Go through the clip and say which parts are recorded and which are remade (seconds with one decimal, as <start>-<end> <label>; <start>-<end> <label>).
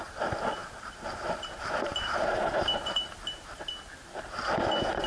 0.0-0.6 recorded; 0.6-3.7 remade; 3.7-5.1 recorded